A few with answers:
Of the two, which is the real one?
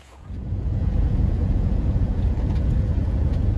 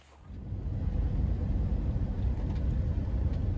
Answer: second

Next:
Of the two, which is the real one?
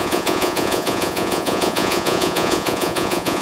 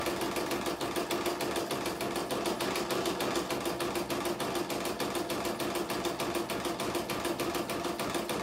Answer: second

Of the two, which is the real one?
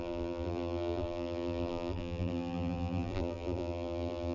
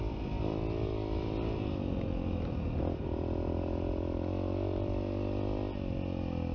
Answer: second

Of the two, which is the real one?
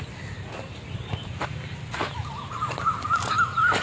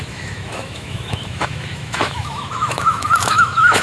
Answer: first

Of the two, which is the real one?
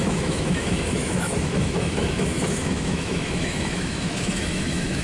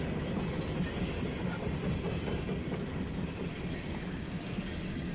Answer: second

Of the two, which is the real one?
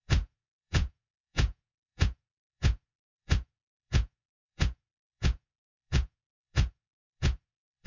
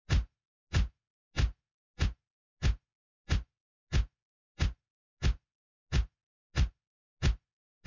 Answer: second